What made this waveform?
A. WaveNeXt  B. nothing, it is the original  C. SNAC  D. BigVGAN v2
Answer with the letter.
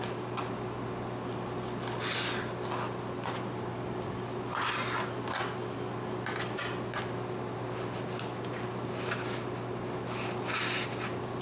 B